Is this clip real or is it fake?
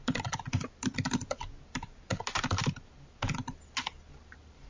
real